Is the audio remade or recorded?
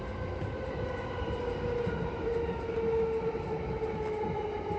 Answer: recorded